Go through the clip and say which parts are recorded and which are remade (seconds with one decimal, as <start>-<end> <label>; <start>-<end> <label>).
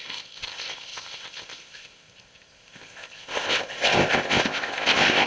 0.0-5.3 remade